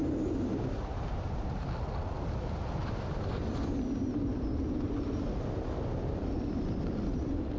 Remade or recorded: recorded